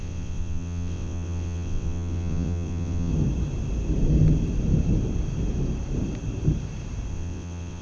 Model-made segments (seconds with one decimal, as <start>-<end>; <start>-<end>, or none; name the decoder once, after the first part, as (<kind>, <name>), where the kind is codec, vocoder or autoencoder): 0.0-3.1 (vocoder, WaveNeXt); 7.1-7.8